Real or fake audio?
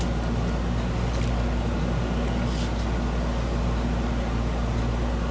real